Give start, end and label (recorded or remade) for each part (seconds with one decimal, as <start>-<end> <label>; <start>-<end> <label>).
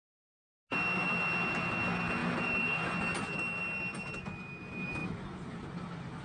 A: 0.0-2.2 recorded; 2.2-2.9 remade; 2.9-5.0 recorded; 5.0-6.2 remade